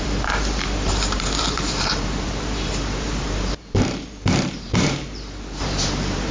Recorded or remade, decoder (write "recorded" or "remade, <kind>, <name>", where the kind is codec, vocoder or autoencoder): remade, vocoder, BigVGAN v2